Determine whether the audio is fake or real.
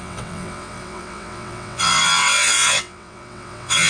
fake